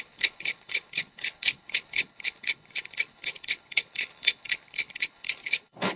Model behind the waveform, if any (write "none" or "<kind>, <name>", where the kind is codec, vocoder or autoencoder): codec, HILCodec